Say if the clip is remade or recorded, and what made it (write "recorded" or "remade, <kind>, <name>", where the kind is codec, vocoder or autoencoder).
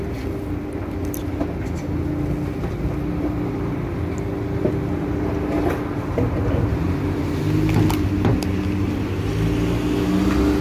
recorded